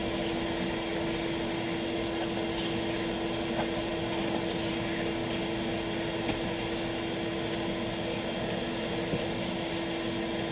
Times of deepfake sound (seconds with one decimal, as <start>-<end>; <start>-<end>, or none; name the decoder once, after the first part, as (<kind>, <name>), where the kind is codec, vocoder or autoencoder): none